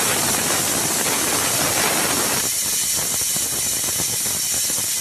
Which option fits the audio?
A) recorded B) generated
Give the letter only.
A